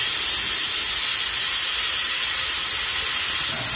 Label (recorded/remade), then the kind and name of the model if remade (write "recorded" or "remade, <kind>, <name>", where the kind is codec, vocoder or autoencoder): recorded